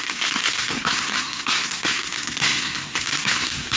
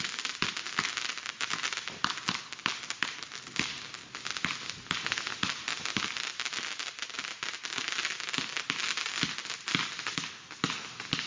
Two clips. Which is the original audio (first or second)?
second